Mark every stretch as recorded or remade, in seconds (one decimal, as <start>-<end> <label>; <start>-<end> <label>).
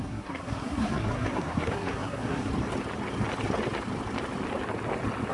0.0-2.5 remade; 2.5-5.3 recorded